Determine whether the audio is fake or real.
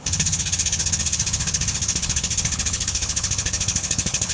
fake